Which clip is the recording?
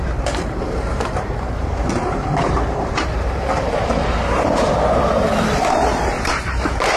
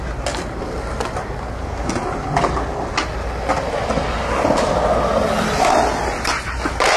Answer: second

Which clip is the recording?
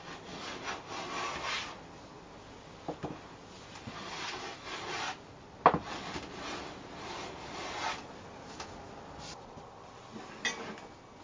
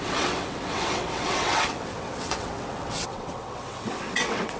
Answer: first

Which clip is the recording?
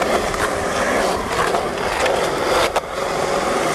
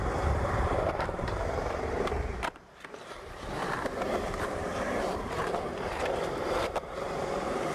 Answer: first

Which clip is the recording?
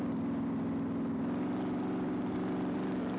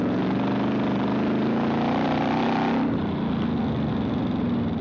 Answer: second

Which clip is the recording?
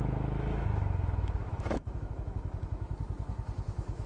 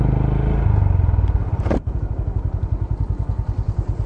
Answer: second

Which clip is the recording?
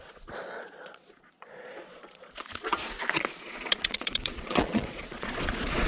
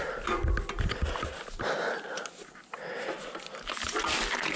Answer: second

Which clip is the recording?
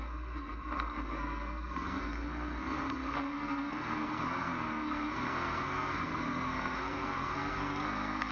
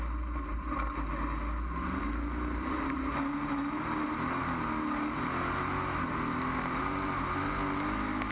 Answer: second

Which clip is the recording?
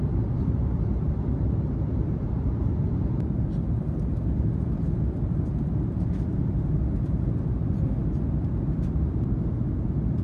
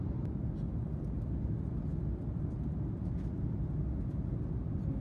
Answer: second